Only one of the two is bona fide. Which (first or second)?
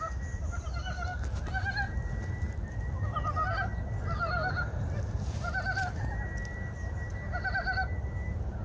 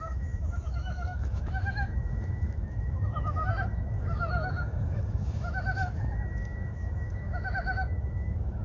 first